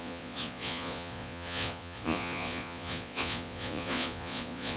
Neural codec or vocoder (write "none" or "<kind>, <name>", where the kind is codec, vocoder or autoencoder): vocoder, Vocos